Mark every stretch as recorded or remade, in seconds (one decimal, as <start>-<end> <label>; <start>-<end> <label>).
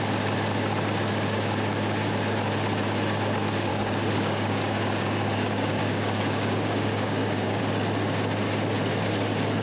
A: 0.0-3.7 recorded; 3.7-7.6 remade; 7.6-9.6 recorded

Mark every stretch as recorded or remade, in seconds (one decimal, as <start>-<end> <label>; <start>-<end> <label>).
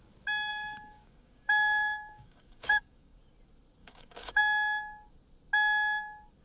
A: 0.0-0.5 recorded; 0.5-3.2 remade; 3.2-3.8 recorded; 3.8-4.4 remade; 4.4-6.4 recorded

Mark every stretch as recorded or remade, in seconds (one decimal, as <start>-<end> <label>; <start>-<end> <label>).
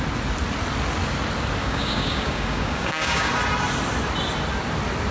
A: 0.0-1.6 recorded; 1.6-3.3 remade; 3.3-5.1 recorded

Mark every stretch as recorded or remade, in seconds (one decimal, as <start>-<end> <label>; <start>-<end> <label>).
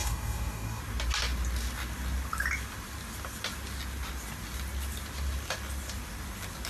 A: 0.0-0.8 remade; 0.8-6.7 recorded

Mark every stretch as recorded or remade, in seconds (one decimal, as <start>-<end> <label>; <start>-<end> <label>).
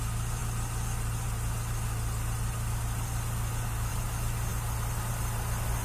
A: 0.0-5.8 recorded